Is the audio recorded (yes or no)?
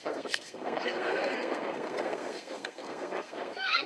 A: no